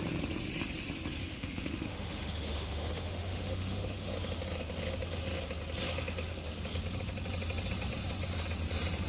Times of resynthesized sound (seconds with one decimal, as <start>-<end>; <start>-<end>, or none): 1.2-4.1